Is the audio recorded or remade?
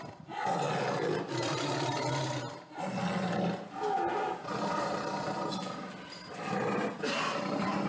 recorded